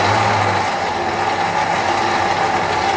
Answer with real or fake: real